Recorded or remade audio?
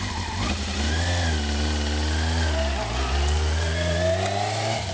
recorded